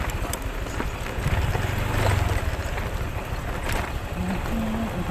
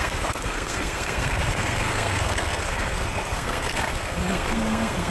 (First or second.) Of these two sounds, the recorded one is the first